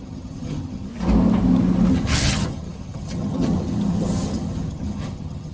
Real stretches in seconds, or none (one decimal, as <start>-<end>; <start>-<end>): 0.9-1.9